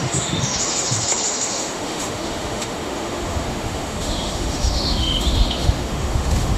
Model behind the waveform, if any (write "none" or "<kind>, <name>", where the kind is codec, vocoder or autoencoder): autoencoder, DAC-VAE